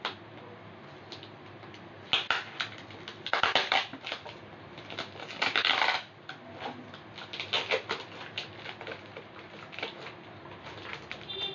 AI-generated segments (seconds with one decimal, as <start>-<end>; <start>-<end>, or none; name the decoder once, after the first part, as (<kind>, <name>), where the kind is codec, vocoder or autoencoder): none